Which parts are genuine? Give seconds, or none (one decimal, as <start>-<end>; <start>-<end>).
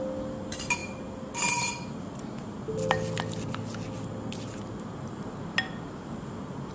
0.0-6.7